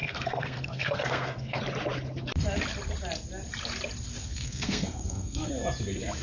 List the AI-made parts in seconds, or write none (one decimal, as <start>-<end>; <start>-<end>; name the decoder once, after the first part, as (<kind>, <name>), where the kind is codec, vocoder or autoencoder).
0.0-1.6 (codec, SNAC); 4.2-5.5